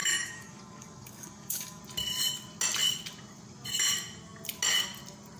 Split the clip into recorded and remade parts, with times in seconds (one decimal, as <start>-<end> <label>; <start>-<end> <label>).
0.0-1.8 remade; 1.8-5.4 recorded